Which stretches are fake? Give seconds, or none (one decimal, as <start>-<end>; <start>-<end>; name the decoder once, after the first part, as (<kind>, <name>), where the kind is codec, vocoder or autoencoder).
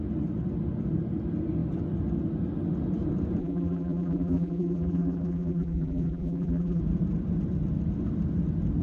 3.4-6.8 (vocoder, BigVGAN v2)